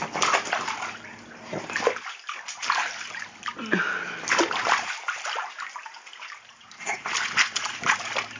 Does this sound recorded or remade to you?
recorded